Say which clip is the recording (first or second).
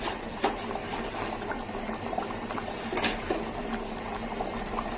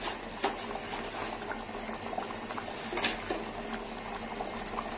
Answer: second